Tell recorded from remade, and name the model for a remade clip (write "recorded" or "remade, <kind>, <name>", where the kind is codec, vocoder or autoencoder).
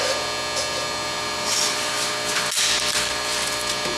recorded